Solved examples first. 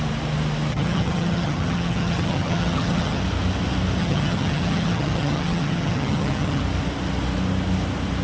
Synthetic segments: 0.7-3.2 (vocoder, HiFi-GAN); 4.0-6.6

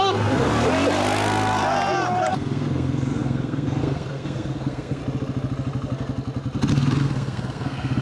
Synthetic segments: 0.0-0.5 (codec, SNAC); 2.3-5.0; 6.7-8.0